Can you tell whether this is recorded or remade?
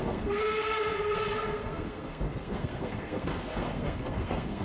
remade